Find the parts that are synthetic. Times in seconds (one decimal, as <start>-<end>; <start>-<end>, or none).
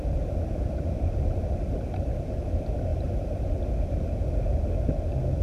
2.9-3.5